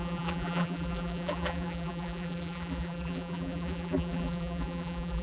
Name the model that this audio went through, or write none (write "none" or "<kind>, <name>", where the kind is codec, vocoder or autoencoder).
vocoder, BigVGAN v2